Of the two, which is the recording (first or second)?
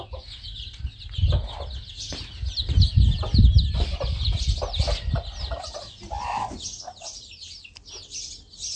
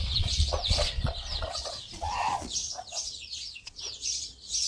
first